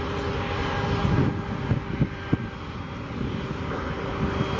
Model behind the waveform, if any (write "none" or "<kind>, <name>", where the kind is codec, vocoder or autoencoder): none